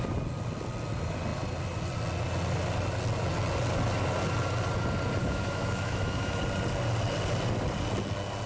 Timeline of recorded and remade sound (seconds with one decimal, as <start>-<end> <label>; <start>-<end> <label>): 0.0-5.2 recorded; 5.2-6.4 remade; 6.4-8.5 recorded